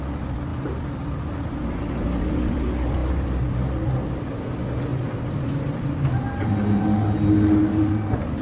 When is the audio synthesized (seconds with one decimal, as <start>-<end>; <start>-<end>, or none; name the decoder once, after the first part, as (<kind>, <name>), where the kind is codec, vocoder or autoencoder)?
none